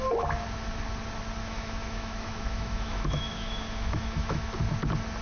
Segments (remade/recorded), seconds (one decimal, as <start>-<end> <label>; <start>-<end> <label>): 0.0-1.4 recorded; 1.4-4.5 remade; 4.5-5.2 recorded